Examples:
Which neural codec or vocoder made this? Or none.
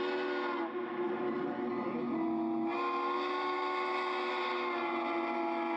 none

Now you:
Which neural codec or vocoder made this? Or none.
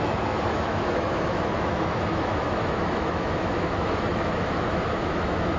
autoencoder, DAC-VAE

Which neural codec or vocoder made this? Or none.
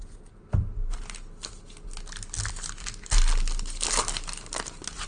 none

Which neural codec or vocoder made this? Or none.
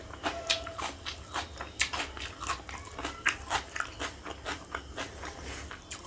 none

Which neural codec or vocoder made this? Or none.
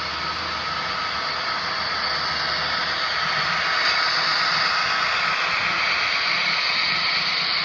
none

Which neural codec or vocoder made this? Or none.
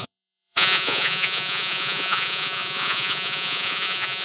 vocoder, Vocos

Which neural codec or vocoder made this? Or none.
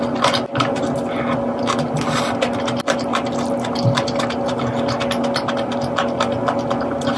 none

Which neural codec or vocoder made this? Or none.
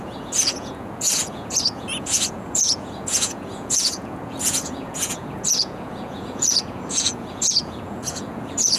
vocoder, Vocos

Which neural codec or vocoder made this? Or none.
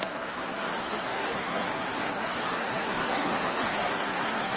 codec, SNAC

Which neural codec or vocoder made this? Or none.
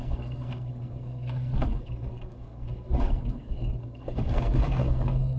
codec, SNAC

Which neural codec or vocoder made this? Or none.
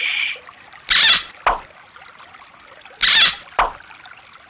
none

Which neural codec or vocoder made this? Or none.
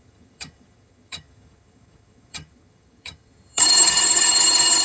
vocoder, HiFi-GAN